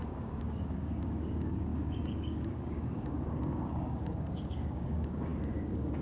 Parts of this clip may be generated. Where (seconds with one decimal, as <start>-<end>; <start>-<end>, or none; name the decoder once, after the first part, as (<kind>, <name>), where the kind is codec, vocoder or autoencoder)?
0.0-6.0 (codec, DAC)